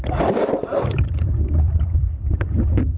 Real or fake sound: real